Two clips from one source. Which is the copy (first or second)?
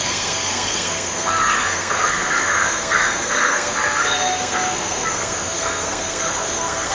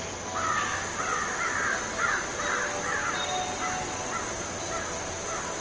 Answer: first